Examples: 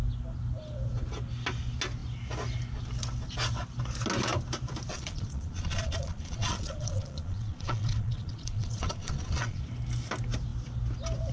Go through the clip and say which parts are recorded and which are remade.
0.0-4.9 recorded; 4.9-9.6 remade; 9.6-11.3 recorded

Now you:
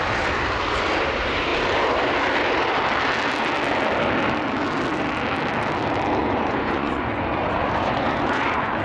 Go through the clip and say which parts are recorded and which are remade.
0.0-6.2 recorded; 6.2-8.8 remade

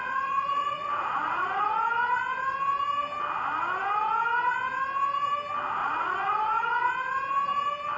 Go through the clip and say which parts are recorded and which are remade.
0.0-1.7 remade; 1.7-5.8 recorded; 5.8-6.9 remade; 6.9-8.0 recorded

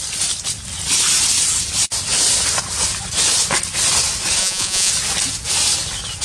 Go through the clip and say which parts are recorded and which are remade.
0.0-4.4 recorded; 4.4-4.9 remade; 4.9-6.2 recorded

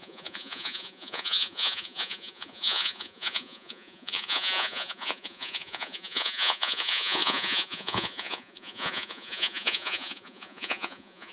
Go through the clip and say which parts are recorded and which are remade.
0.0-11.3 remade

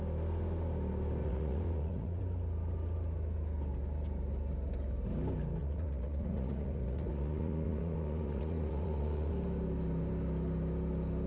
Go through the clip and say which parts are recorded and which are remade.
0.0-1.2 recorded; 1.2-2.2 remade; 2.2-5.6 recorded; 5.6-9.3 remade; 9.3-11.3 recorded

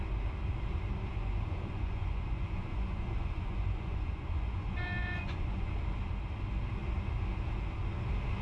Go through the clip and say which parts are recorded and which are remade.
0.0-1.2 recorded; 1.2-5.7 remade; 5.7-8.4 recorded

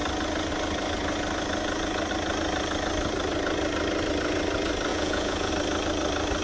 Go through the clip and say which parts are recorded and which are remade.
0.0-4.9 recorded; 4.9-5.5 remade; 5.5-6.4 recorded